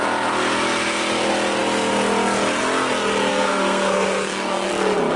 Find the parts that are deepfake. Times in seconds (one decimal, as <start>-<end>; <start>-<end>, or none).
3.3-4.7